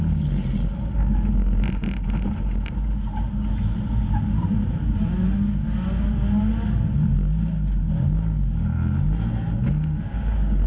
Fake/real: real